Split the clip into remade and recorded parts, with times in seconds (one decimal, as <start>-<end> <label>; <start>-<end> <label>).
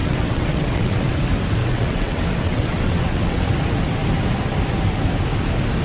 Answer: 0.0-1.1 remade; 1.1-1.6 recorded; 1.6-3.5 remade; 3.5-5.8 recorded